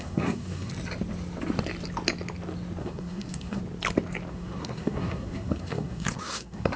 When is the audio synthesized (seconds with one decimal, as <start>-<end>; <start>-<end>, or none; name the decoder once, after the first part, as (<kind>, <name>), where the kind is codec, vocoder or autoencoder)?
0.0-0.7 (codec, SNAC); 2.8-3.6; 4.3-6.8